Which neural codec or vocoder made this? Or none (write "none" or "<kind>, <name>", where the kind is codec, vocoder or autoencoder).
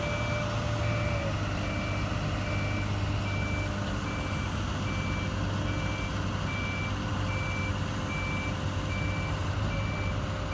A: none